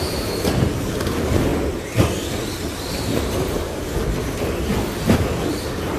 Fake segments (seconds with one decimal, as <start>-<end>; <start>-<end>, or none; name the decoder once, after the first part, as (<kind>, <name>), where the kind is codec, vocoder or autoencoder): 0.0-1.5 (vocoder, BigVGAN v2); 2.7-3.9; 5.5-6.0